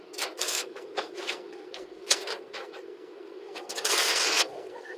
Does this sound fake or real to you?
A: fake